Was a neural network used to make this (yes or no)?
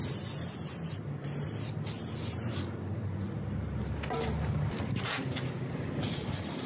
no